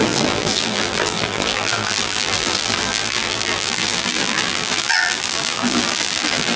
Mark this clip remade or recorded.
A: remade